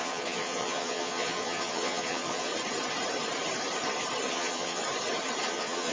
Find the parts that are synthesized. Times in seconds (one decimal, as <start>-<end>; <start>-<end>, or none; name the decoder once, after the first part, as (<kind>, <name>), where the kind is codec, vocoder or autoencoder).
0.0-2.5 (vocoder, Vocos); 4.3-4.8; 5.5-5.9